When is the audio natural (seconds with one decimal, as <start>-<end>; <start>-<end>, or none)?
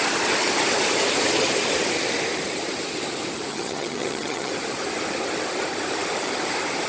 0.0-3.5; 4.5-6.9